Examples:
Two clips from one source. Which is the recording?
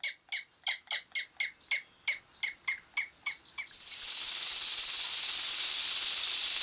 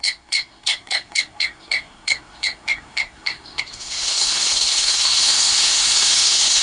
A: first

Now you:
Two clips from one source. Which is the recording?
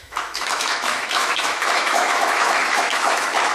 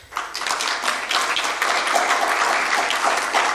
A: second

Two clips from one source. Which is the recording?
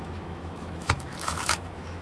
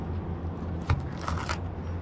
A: second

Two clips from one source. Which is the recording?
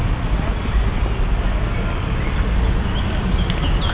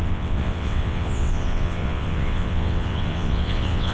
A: first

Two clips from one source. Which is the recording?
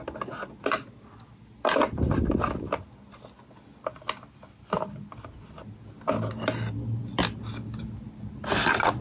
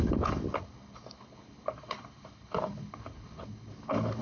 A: first